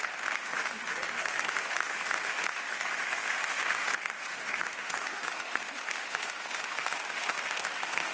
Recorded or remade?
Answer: remade